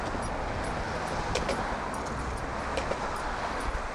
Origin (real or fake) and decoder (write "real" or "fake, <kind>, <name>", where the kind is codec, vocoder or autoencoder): real